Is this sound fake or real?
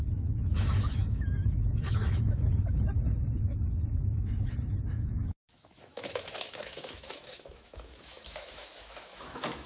fake